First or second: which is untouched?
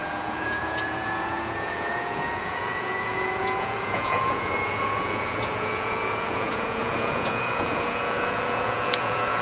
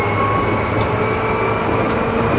second